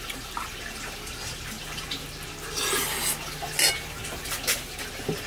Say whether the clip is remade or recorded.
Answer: recorded